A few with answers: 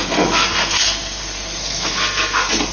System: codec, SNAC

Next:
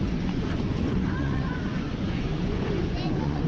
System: vocoder, Vocos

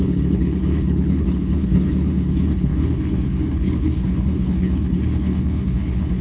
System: codec, HILCodec